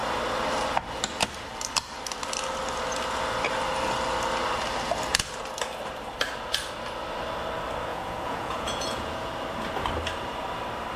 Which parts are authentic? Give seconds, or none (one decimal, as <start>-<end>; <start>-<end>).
0.0-7.9; 9.3-11.0